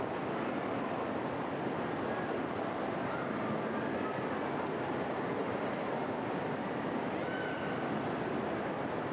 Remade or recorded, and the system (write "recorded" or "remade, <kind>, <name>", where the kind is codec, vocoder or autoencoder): recorded